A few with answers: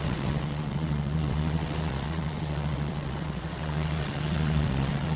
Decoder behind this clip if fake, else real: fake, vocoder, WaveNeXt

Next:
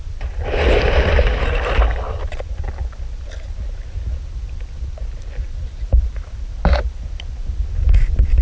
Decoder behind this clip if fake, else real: real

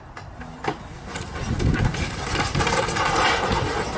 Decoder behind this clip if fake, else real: real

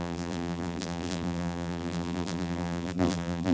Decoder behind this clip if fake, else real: fake, vocoder, BigVGAN v2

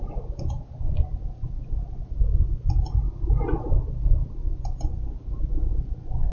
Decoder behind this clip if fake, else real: real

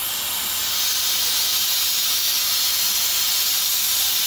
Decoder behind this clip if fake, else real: real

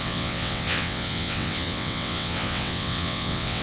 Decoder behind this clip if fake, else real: fake, vocoder, WaveNeXt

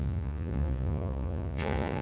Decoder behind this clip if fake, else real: fake, vocoder, Vocos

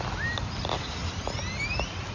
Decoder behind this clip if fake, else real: real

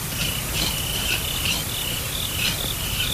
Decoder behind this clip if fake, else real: real